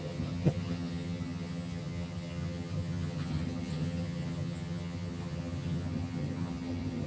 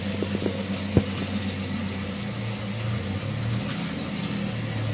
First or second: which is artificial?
first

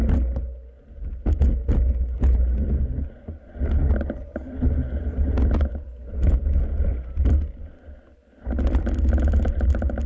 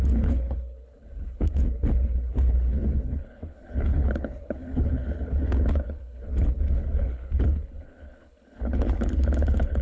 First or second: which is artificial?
second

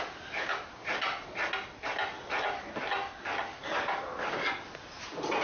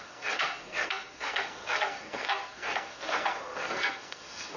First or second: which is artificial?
second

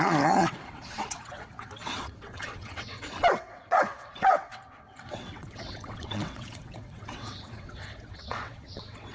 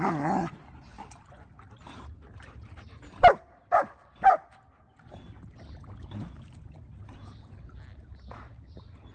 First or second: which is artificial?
first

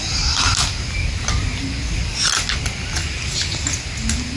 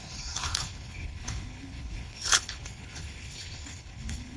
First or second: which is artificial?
second